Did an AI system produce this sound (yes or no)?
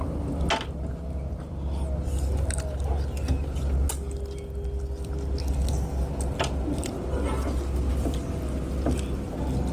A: no